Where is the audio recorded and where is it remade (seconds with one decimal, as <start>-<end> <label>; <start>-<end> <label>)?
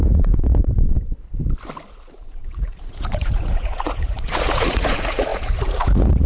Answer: 0.0-0.6 remade; 0.6-2.0 recorded; 2.0-6.3 remade